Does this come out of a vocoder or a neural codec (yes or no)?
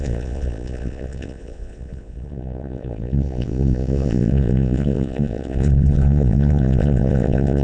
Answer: yes